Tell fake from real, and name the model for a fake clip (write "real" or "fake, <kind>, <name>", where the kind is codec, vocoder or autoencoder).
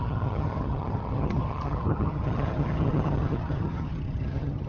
fake, vocoder, HiFi-GAN